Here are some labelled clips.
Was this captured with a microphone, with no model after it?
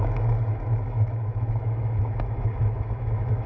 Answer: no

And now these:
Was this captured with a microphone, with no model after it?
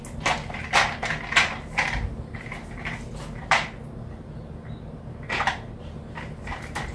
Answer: yes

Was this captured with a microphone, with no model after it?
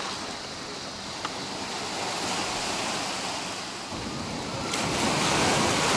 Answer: yes